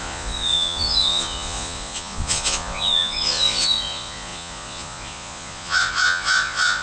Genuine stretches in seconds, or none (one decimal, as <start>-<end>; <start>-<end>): none